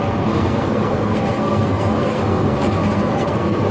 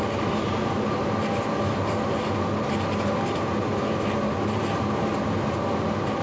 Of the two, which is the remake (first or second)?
first